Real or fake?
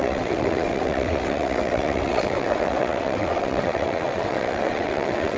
fake